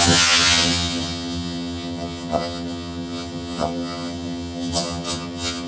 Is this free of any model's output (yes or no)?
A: no